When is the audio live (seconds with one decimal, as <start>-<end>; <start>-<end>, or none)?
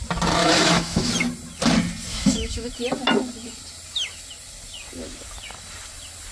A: 0.0-0.4; 1.1-2.1; 2.7-6.3